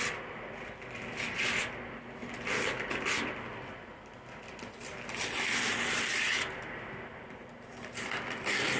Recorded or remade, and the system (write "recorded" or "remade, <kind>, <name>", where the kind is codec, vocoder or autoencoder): recorded